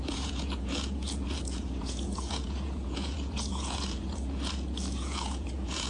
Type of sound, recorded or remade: remade